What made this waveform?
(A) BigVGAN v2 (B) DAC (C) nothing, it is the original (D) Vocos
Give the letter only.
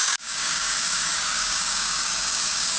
B